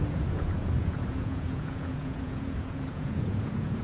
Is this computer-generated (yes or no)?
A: yes